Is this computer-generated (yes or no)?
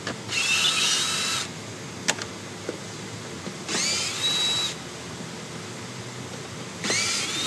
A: no